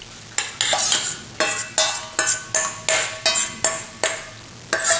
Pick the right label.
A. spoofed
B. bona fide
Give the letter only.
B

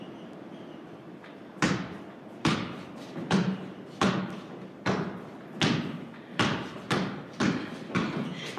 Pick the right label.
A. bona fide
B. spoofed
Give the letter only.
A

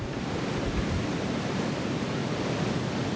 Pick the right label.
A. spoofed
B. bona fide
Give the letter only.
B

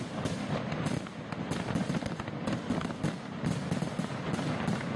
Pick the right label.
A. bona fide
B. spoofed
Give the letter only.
A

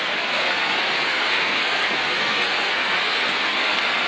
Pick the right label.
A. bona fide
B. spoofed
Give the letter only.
B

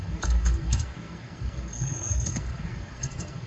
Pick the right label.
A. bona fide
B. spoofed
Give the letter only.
B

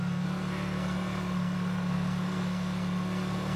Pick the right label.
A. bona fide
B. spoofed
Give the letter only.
B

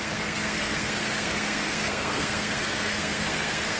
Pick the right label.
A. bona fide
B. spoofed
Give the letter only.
B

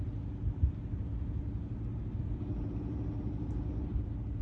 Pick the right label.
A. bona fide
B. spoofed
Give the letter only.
A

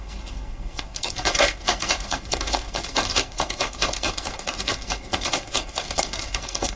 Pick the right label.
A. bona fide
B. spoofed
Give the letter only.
B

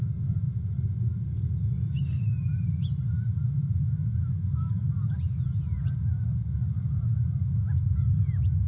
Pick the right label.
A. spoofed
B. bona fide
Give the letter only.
B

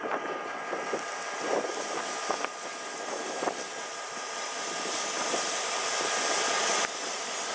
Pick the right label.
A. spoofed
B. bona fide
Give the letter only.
B